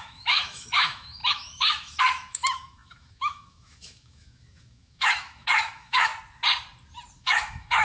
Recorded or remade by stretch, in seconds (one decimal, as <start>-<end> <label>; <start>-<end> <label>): 0.0-6.1 remade; 6.1-7.2 recorded; 7.2-7.8 remade